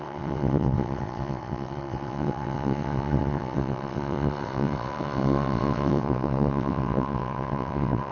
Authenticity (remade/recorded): remade